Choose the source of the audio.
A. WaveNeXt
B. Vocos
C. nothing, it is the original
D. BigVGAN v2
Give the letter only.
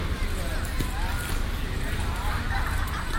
C